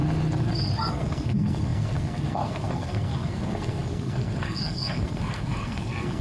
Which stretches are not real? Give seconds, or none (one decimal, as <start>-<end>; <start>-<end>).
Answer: 0.9-6.2